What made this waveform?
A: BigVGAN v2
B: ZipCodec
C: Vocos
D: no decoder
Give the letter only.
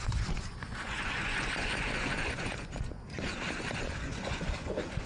C